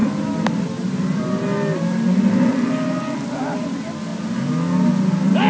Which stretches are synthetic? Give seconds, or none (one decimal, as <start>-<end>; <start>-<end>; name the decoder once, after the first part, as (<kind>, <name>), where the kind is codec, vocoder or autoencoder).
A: none